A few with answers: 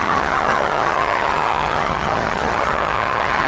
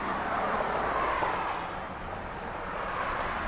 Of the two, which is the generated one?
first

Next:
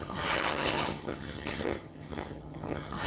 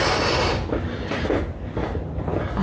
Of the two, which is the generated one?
first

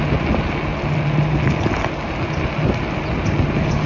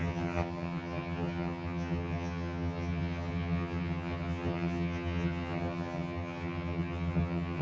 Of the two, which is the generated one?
second